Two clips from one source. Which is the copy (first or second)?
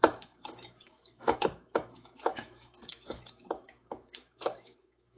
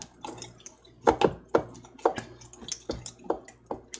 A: first